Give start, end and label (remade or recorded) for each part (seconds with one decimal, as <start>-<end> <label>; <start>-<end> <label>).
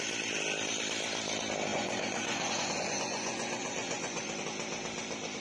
0.0-1.7 recorded; 1.7-4.3 remade; 4.3-5.4 recorded